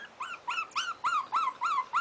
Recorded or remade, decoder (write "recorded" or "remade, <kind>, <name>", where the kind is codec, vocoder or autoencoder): recorded